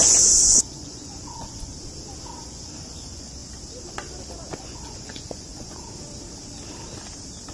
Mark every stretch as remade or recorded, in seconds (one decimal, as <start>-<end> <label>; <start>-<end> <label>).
0.0-1.7 remade; 1.7-2.4 recorded; 2.4-3.4 remade; 3.4-4.6 recorded; 4.6-5.8 remade; 5.8-7.5 recorded